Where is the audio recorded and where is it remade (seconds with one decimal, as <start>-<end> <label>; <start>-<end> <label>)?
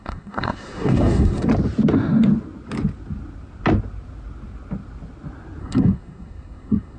0.0-1.5 remade; 1.5-5.6 recorded; 5.6-7.0 remade